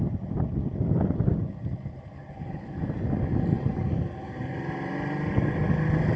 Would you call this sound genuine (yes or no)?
yes